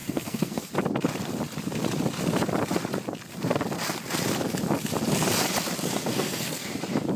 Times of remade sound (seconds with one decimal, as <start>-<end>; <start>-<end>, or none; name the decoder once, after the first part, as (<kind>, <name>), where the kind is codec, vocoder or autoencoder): 0.0-0.7 (codec, SNAC); 6.1-6.7